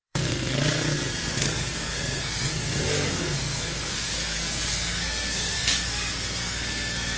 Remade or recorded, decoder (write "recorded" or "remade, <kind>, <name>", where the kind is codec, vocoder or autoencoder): remade, codec, SNAC